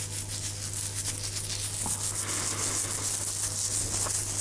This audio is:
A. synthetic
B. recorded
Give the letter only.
B